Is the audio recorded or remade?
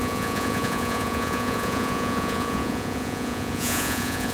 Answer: remade